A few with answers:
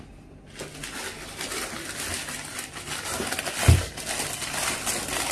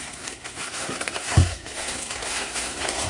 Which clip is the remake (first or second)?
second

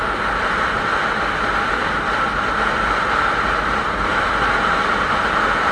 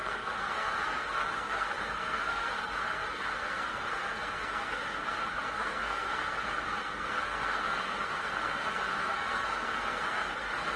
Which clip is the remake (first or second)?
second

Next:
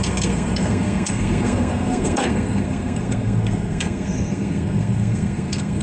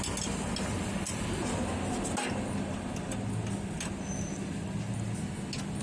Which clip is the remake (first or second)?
first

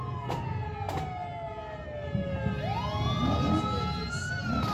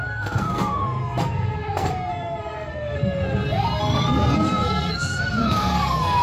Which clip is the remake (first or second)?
second